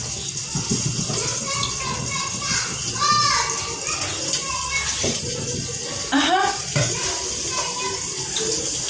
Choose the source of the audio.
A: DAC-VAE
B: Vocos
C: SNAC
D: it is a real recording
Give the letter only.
D